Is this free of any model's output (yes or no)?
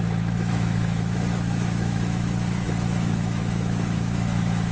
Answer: no